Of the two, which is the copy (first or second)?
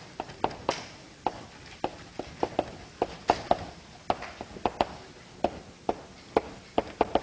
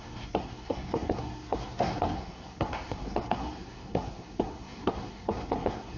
second